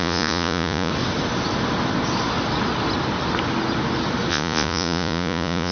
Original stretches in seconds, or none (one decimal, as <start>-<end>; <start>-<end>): 0.9-4.3

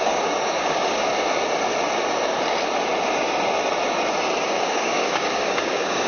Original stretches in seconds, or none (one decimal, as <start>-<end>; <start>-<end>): 1.1-4.4